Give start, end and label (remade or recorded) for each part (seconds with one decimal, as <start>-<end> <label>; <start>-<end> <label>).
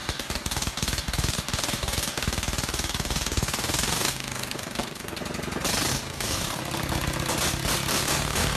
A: 0.0-5.2 remade; 5.2-5.9 recorded; 5.9-6.6 remade; 6.6-7.9 recorded; 7.9-8.6 remade